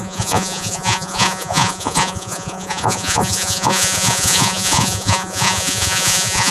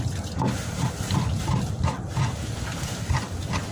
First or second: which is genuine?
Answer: second